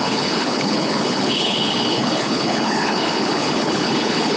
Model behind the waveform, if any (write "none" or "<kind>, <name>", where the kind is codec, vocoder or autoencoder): codec, HILCodec